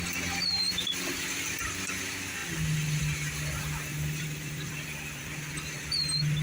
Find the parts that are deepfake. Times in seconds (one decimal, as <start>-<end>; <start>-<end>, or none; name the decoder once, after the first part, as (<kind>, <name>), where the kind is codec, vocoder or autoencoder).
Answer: 0.6-1.5 (vocoder, BigVGAN v2); 3.9-5.5